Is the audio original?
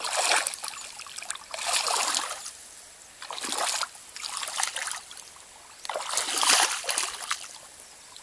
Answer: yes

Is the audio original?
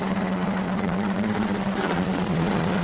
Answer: no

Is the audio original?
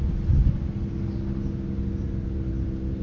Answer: yes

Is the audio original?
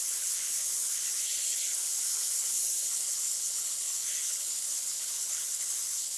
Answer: no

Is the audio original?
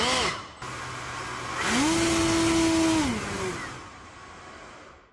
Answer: yes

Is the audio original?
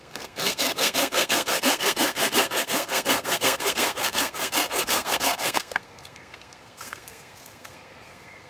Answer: no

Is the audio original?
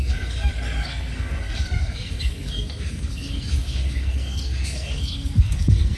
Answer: no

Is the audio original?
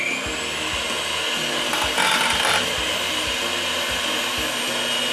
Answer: yes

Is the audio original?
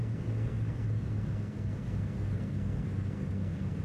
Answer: no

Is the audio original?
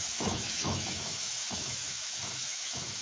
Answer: no